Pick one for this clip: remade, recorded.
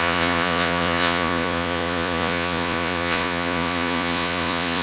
remade